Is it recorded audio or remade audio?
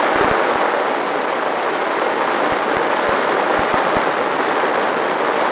recorded